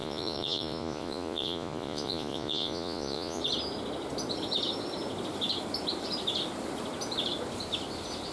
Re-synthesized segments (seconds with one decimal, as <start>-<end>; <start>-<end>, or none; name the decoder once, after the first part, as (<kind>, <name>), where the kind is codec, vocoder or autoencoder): 0.0-3.4 (vocoder, Vocos)